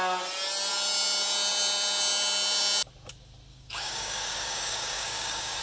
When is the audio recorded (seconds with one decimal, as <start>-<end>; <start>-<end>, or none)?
0.0-3.5